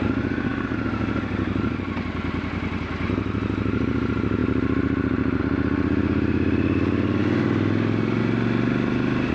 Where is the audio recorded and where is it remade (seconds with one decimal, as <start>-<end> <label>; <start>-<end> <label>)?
0.0-9.3 recorded